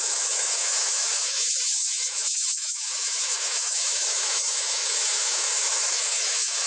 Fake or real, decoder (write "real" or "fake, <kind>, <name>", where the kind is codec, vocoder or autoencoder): fake, autoencoder, DAC-VAE